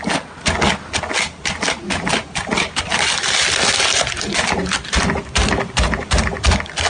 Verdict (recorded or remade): recorded